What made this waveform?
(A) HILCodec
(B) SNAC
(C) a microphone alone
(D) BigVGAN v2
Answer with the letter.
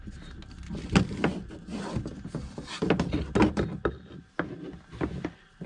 C